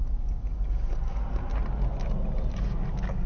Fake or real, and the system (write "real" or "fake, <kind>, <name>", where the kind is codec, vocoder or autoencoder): real